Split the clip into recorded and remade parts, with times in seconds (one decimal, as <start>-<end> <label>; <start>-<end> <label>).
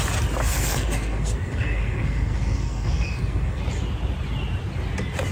0.0-0.4 recorded; 0.4-3.6 remade; 3.6-5.3 recorded